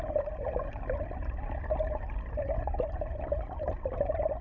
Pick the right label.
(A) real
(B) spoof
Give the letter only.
A